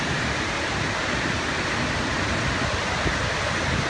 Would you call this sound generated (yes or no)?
no